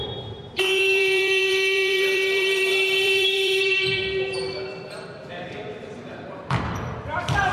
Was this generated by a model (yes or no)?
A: yes